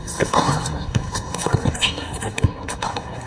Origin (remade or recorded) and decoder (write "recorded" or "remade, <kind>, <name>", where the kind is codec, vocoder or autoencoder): remade, codec, SNAC